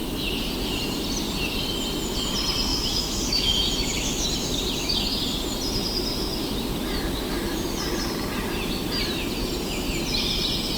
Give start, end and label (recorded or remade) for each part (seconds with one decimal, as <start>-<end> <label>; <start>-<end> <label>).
0.0-2.7 recorded; 2.7-4.3 remade; 4.3-10.8 recorded